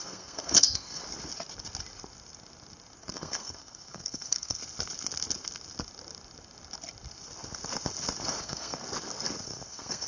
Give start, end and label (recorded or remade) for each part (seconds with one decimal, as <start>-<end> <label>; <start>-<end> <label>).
0.0-1.0 remade; 1.0-3.1 recorded; 3.1-4.6 remade; 4.6-8.4 recorded; 8.4-8.8 remade; 8.8-9.4 recorded; 9.4-10.1 remade